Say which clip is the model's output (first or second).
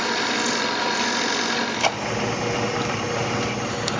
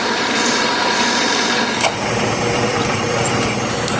second